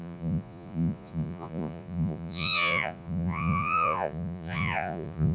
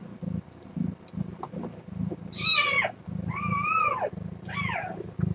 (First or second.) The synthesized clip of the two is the first